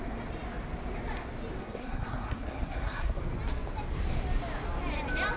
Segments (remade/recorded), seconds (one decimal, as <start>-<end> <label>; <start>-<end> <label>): 0.0-1.6 recorded; 1.6-3.2 remade; 3.2-5.4 recorded

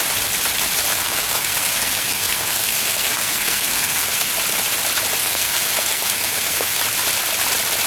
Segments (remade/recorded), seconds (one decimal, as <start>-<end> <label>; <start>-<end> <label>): 0.0-0.9 recorded; 0.9-4.3 remade; 4.3-5.2 recorded; 5.2-6.8 remade; 6.8-7.9 recorded

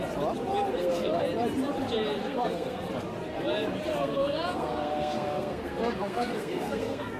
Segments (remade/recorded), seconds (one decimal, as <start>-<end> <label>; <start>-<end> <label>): 0.0-0.7 recorded; 0.7-1.2 remade; 1.2-2.2 recorded; 2.2-2.8 remade; 2.8-3.9 recorded; 3.9-7.2 remade